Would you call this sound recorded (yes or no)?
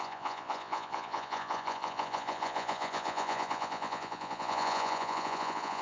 no